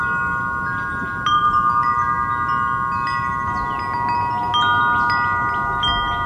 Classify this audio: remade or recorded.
recorded